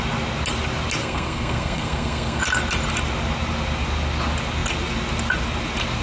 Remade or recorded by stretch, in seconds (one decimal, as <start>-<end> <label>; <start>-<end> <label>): 0.0-1.0 recorded; 1.0-2.4 remade; 2.4-6.0 recorded